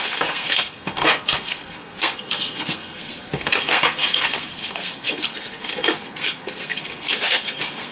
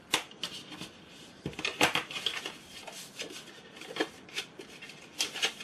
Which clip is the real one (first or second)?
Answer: second